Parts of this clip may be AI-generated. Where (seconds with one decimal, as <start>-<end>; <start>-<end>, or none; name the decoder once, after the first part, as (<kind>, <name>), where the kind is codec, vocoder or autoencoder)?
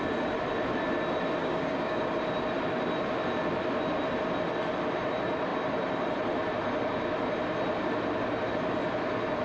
1.4-2.1 (codec, DAC)